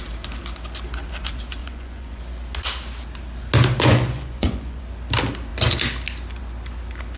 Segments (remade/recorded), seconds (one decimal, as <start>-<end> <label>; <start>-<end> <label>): 0.0-1.6 recorded; 1.6-2.2 remade; 2.2-3.8 recorded; 3.8-4.8 remade; 4.8-7.2 recorded